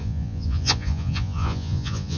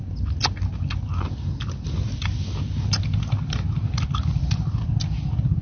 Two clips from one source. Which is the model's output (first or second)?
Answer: first